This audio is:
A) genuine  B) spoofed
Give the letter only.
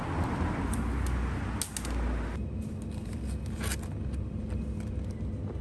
A